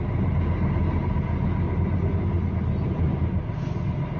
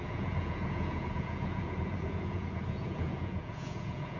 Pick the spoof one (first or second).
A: second